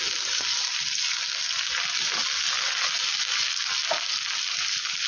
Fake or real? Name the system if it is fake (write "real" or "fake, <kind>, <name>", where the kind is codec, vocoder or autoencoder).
real